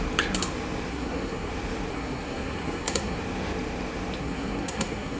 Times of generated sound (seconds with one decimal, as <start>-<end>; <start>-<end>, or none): 0.9-1.5; 1.9-3.2; 4.2-5.2

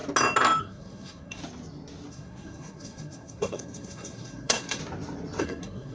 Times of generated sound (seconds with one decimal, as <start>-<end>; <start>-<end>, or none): 0.6-1.4; 2.1-4.8; 5.4-5.9

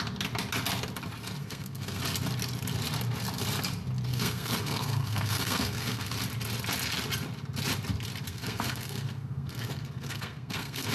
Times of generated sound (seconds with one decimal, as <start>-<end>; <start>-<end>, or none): 1.4-2.0; 4.1-6.1; 8.3-10.9

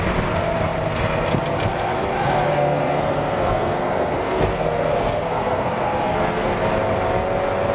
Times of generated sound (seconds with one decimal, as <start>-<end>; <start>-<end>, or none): 2.5-6.5